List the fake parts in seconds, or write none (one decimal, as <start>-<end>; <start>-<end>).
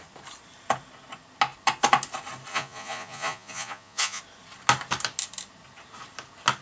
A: 2.5-4.2